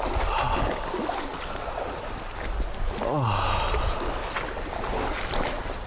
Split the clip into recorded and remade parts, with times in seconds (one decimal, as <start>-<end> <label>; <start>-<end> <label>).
0.0-5.9 recorded